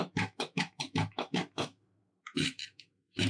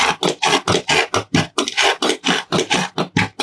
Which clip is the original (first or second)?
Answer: second